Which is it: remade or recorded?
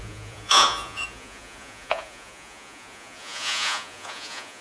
remade